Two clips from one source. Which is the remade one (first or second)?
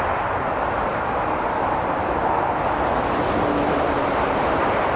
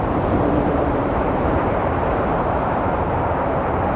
second